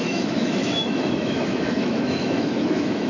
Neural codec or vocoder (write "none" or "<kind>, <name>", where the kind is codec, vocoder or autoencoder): autoencoder, DAC-VAE